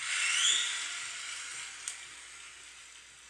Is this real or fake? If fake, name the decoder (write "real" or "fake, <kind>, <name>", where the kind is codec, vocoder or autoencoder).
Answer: real